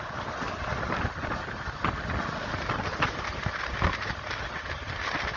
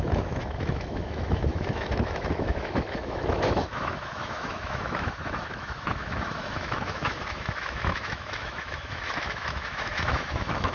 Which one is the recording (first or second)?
first